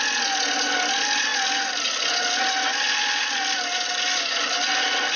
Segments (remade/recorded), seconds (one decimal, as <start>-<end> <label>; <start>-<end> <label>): 0.0-5.2 recorded